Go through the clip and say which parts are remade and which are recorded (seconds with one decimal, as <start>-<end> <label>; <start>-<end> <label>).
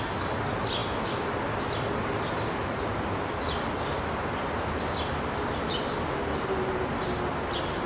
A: 0.0-7.9 recorded